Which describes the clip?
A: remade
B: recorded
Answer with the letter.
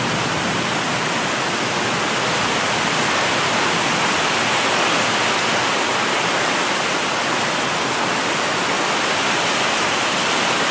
B